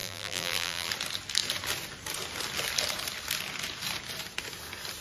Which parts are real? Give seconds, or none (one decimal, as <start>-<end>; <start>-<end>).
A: 0.9-5.0